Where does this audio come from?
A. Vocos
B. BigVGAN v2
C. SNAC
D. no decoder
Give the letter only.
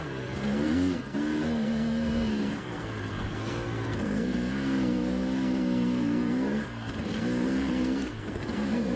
C